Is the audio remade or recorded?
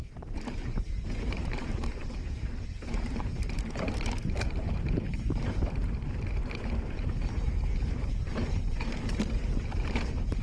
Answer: remade